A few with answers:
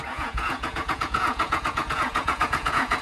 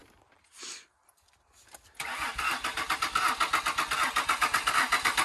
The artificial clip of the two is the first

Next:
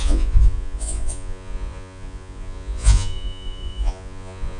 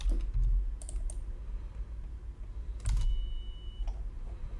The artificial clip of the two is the first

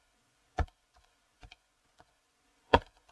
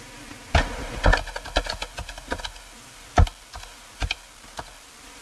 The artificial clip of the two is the first